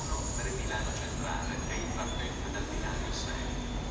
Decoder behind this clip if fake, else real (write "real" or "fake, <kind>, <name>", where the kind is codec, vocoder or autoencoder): real